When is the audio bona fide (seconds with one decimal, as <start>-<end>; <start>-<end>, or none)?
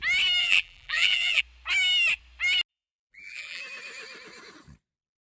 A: 0.0-0.4; 1.4-2.7; 3.6-5.2